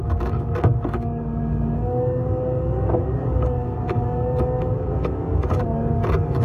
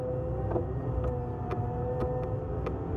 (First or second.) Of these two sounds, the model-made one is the first